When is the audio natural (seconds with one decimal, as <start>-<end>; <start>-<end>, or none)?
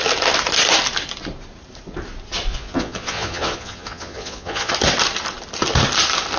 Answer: 0.0-2.5; 4.7-6.4